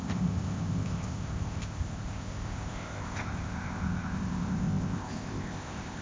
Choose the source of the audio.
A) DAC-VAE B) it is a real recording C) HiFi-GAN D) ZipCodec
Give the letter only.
D